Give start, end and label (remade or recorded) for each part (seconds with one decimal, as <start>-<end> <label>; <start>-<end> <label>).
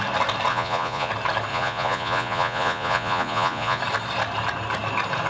0.0-0.5 recorded; 0.5-1.1 remade; 1.1-1.5 recorded; 1.5-3.8 remade; 3.8-5.3 recorded